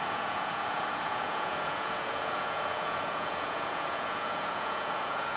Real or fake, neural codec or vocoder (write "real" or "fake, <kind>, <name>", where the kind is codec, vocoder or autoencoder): fake, vocoder, Vocos